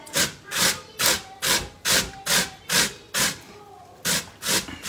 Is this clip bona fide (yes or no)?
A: yes